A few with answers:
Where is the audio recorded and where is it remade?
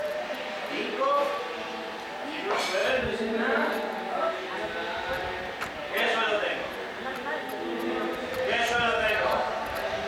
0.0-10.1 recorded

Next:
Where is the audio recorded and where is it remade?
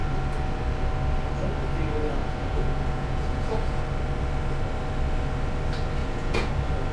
0.0-2.2 recorded; 2.2-3.8 remade; 3.8-6.0 recorded; 6.0-6.5 remade; 6.5-6.9 recorded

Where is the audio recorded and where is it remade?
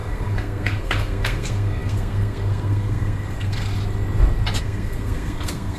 0.0-3.7 remade; 3.7-4.6 recorded; 4.6-5.8 remade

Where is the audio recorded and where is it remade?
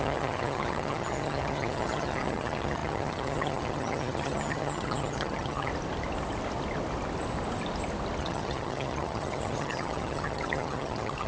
0.0-5.7 remade; 5.7-8.2 recorded; 8.2-11.3 remade